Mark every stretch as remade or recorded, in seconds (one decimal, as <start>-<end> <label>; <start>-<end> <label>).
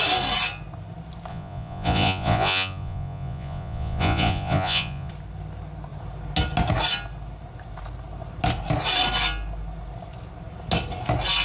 0.0-1.3 recorded; 1.3-5.1 remade; 5.1-11.4 recorded